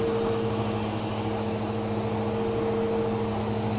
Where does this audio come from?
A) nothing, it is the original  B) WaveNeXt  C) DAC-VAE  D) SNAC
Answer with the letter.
A